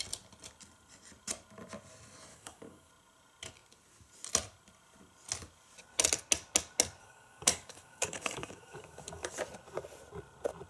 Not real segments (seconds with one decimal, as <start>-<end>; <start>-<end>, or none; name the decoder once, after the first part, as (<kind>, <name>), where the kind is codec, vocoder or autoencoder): 2.3-2.9 (codec, DAC); 7.0-9.4